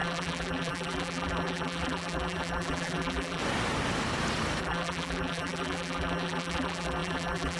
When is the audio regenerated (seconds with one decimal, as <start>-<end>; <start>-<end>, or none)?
0.0-3.4; 4.6-7.6